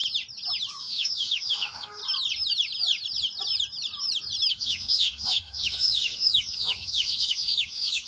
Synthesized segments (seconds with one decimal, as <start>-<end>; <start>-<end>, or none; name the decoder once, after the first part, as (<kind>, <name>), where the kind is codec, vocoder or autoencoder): 0.8-2.0 (autoencoder, DAC-VAE); 4.5-8.1